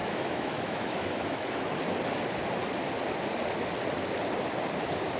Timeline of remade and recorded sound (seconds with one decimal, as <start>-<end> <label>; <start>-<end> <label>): 0.0-1.7 remade; 1.7-5.2 recorded